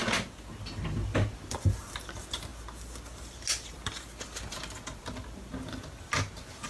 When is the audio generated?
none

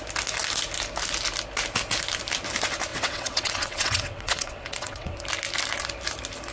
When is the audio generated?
2.9-5.2 (vocoder, WaveNeXt)

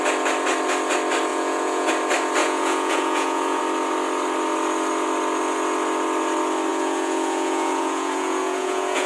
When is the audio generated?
1.3-1.9 (vocoder, Vocos); 2.4-3.6; 6.7-9.1

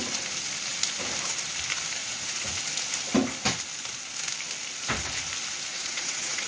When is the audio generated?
2.0-2.6 (vocoder, Vocos); 5.7-6.5